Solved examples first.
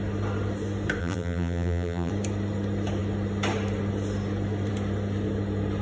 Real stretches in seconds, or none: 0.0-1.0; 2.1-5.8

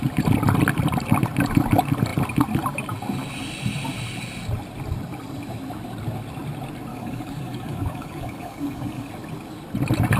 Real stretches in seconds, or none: 0.0-6.9; 9.1-10.2

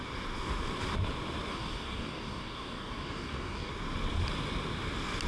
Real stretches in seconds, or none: 0.0-1.5; 3.7-5.3

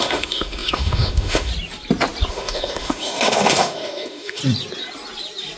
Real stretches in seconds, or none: 1.5-2.3; 4.4-5.6

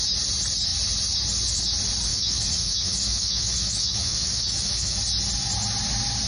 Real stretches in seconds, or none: 0.0-2.1; 5.0-6.3

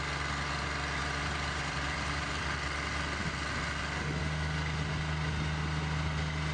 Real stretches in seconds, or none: 0.0-1.0; 2.4-6.5